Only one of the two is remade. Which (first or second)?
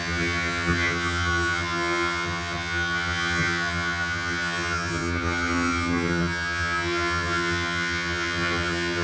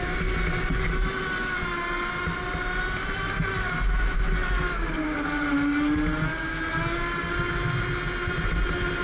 first